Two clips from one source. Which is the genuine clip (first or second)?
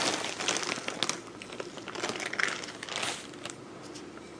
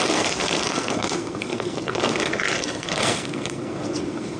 first